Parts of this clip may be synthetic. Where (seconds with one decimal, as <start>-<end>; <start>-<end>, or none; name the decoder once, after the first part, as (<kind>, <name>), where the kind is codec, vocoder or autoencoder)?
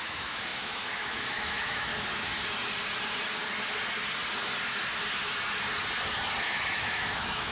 0.0-1.9 (autoencoder, DAC-VAE); 6.4-7.5